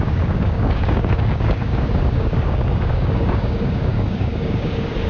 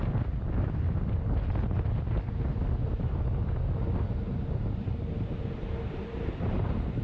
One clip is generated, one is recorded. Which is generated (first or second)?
first